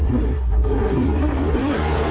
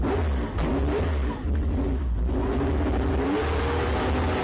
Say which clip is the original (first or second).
second